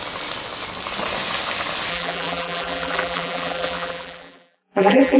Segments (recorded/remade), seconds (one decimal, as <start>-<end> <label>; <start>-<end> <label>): 0.0-1.9 recorded; 1.9-5.2 remade